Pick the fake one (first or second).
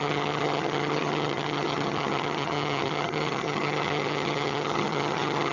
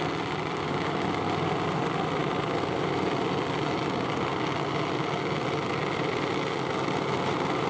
first